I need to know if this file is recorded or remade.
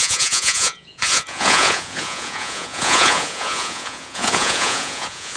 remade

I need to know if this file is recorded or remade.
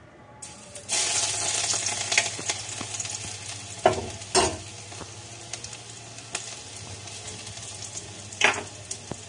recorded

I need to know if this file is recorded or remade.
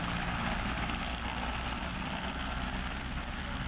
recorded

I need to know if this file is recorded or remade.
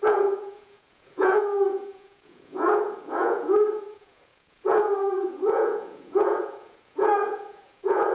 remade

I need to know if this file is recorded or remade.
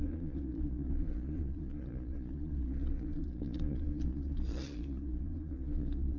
remade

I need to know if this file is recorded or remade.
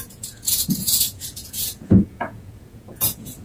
remade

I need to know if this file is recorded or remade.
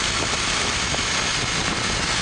recorded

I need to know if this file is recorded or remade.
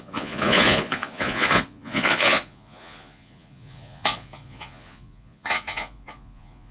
remade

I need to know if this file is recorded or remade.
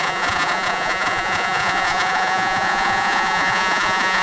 remade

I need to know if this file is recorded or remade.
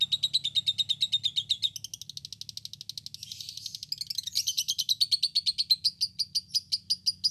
recorded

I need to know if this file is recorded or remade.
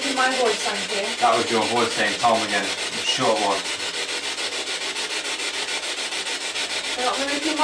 recorded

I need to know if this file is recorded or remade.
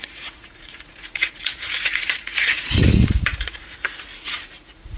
remade